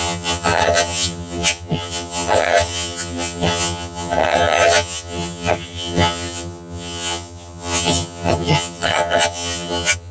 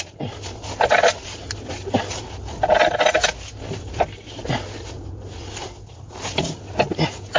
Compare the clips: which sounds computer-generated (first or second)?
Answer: first